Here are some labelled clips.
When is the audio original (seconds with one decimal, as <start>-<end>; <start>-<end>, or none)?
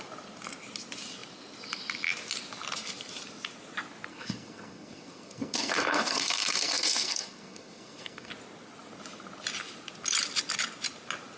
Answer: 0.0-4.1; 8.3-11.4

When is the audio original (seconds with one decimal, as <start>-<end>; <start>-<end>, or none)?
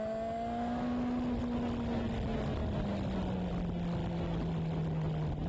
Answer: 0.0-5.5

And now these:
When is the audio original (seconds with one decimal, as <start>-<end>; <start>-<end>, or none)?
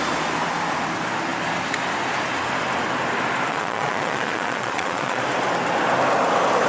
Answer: 0.0-3.5; 5.2-6.7